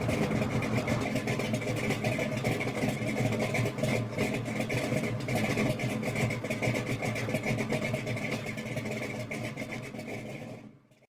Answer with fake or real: real